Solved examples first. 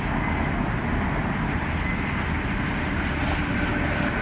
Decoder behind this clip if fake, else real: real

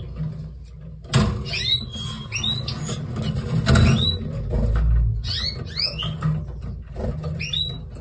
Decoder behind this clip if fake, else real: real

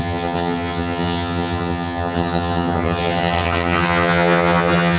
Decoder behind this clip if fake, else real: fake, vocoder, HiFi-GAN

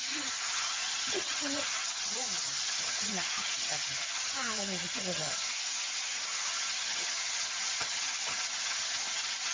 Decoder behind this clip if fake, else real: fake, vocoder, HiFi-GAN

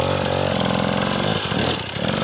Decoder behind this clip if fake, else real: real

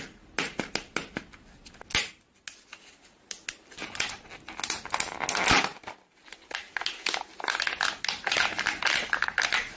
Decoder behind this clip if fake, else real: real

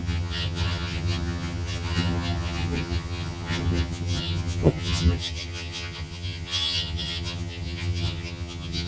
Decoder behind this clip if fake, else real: fake, vocoder, HiFi-GAN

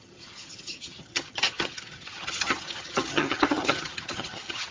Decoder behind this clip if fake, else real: fake, vocoder, HiFi-GAN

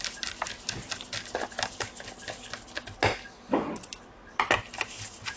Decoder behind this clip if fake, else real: real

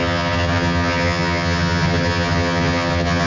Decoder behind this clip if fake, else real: fake, vocoder, HiFi-GAN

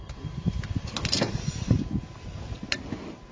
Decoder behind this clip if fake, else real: real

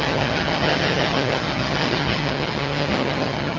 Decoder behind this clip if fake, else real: fake, vocoder, HiFi-GAN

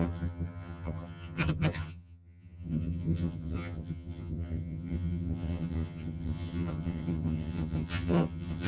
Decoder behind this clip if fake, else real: fake, vocoder, HiFi-GAN